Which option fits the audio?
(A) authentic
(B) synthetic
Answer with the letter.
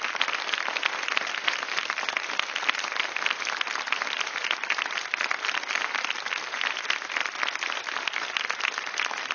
A